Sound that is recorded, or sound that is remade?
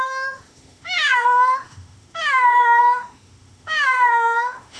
remade